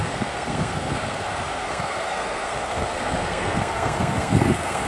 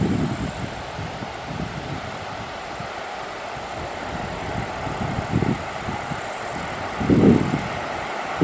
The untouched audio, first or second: second